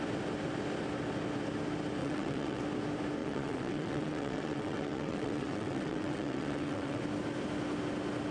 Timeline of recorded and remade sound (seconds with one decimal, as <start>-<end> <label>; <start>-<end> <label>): 0.0-2.0 recorded; 2.0-2.6 remade; 2.6-3.2 recorded; 3.2-7.0 remade; 7.0-8.3 recorded